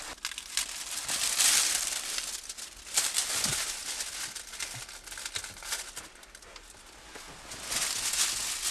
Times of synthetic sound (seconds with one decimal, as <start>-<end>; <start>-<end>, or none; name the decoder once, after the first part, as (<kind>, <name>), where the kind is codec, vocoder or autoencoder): none